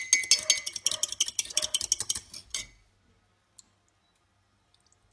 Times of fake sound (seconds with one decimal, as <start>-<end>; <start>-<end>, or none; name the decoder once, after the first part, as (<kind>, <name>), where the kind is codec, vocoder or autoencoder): none